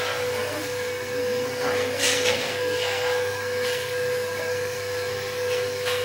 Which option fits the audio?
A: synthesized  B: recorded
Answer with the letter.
A